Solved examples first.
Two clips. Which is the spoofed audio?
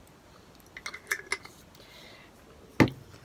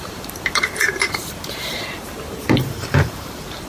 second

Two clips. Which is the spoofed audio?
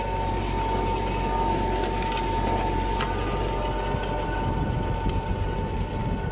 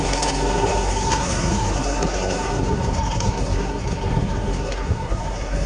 second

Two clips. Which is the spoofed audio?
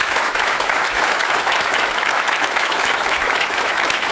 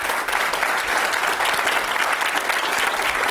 first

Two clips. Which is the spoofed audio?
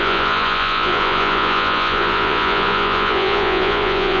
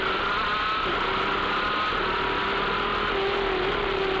first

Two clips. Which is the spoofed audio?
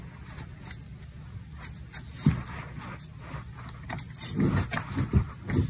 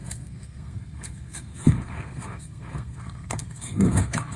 second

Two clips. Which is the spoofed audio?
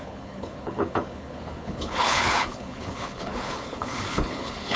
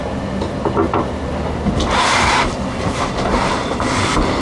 first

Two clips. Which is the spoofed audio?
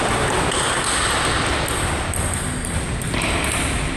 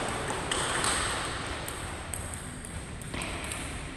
second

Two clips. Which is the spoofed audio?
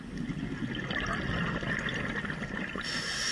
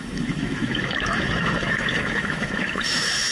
second